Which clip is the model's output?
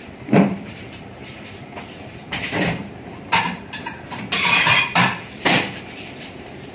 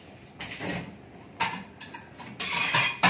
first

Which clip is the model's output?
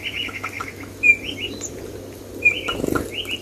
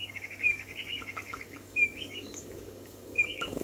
second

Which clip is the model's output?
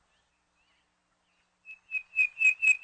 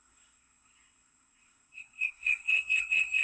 second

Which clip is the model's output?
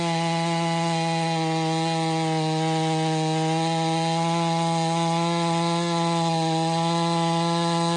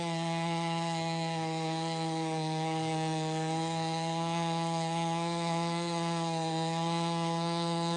second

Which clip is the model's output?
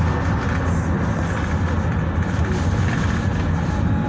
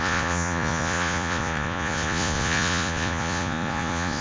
second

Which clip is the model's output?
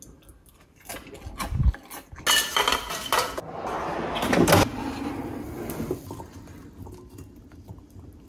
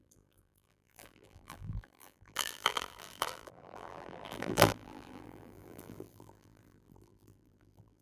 second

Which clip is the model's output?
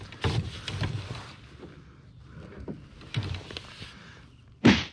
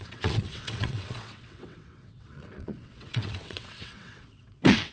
second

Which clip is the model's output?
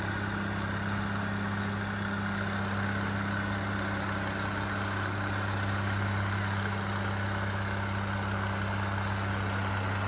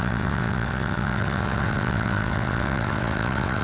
second